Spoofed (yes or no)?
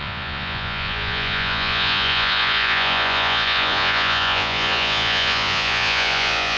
yes